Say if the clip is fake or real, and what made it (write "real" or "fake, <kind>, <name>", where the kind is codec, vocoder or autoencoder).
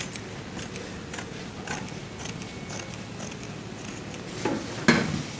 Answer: real